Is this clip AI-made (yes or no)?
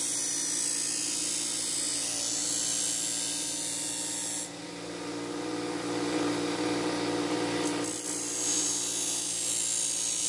no